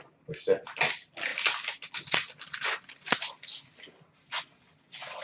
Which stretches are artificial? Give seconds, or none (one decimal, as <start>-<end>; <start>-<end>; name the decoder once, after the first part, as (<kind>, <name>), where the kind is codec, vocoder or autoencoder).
none

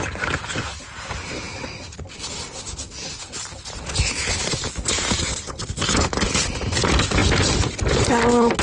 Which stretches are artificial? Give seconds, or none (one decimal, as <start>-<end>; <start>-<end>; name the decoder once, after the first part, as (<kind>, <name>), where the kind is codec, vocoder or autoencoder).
none

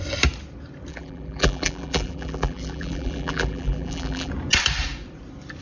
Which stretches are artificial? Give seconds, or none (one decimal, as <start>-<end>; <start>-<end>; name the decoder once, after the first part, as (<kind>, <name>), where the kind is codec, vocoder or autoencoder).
0.9-4.3 (vocoder, BigVGAN v2)

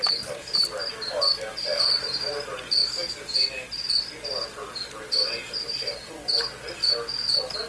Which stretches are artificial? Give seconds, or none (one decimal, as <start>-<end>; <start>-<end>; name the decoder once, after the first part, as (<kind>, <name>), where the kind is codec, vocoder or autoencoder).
0.0-0.8 (vocoder, BigVGAN v2); 1.5-2.8; 5.5-6.8

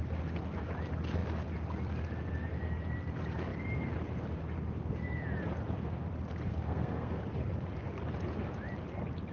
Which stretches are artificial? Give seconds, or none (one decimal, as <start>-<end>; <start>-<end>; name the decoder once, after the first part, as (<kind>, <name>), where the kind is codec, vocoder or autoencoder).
6.5-7.2 (codec, SNAC)

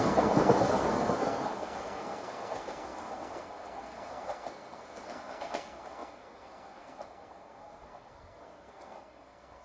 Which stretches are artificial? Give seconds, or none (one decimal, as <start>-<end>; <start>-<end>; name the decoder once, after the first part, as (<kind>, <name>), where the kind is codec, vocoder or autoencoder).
0.0-9.6 (codec, SNAC)